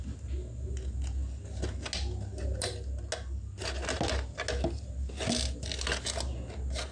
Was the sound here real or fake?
real